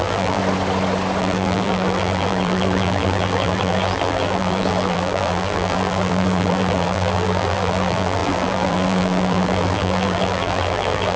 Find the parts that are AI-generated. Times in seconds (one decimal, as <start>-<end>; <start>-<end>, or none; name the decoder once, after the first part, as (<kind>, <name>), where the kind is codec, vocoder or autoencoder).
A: 0.0-0.4 (vocoder, BigVGAN v2); 1.2-11.2